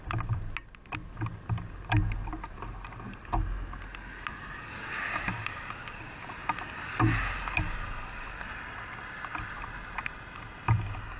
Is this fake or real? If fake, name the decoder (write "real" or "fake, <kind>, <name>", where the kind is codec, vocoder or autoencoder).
real